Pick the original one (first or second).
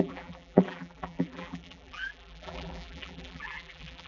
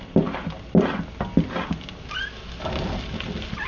second